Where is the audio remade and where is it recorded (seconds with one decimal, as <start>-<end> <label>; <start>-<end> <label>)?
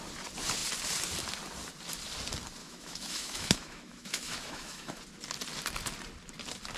0.0-2.6 recorded; 2.6-5.0 remade; 5.0-6.8 recorded